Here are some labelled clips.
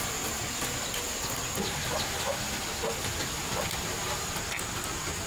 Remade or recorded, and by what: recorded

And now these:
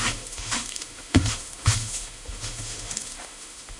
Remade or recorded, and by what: remade, autoencoder, DAC-VAE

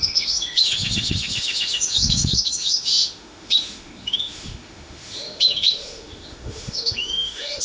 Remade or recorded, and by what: remade, autoencoder, DAC-VAE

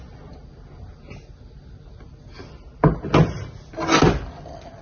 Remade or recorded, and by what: recorded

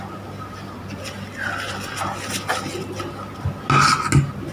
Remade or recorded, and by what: recorded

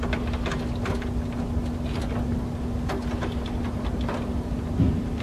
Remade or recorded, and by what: recorded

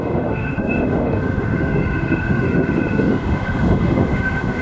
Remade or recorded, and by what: remade, autoencoder, DAC-VAE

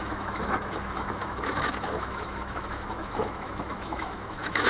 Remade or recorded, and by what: remade, autoencoder, DAC-VAE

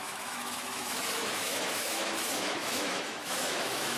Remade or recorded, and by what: remade, autoencoder, DAC-VAE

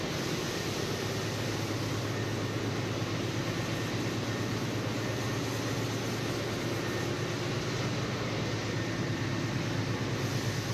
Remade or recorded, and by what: recorded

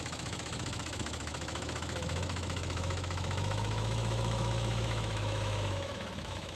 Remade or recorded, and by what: remade, autoencoder, DAC-VAE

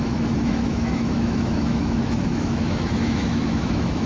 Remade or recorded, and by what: remade, autoencoder, DAC-VAE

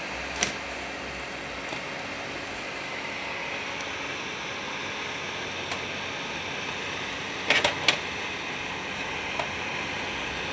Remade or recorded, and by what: recorded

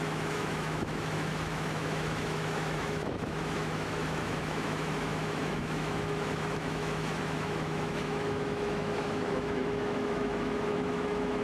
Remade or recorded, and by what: remade, autoencoder, DAC-VAE